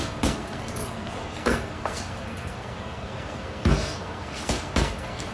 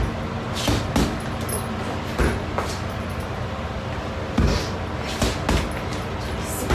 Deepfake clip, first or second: first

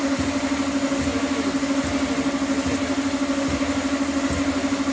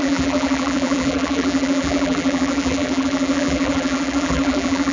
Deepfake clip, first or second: second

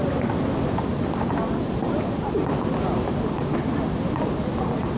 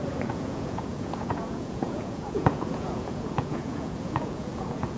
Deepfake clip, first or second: second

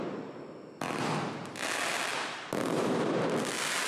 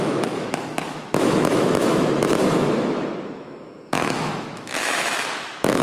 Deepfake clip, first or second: second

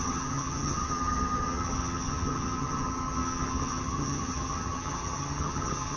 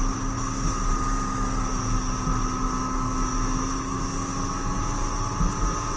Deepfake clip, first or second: first